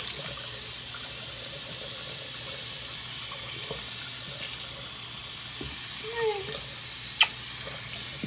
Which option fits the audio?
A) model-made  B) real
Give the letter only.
B